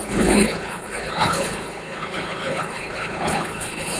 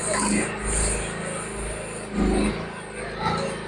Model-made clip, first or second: first